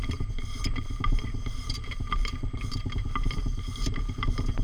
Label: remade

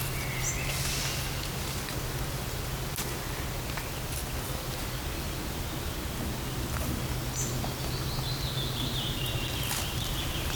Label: recorded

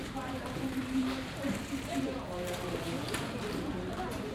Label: remade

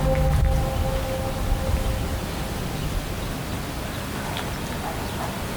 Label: recorded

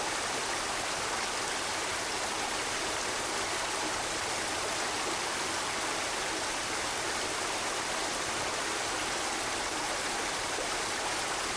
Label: recorded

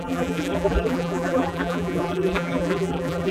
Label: remade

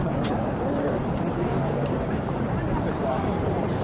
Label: remade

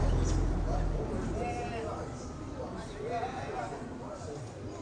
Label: recorded